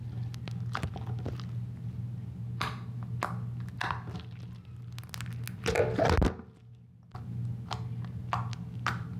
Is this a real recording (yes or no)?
yes